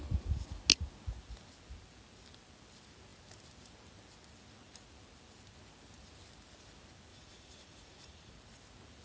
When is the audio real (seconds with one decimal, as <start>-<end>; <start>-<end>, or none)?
0.0-7.1; 8.3-9.0